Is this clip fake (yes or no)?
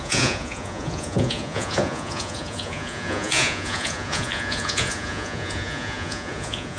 yes